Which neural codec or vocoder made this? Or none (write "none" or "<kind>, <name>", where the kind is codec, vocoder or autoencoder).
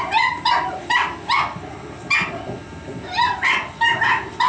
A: none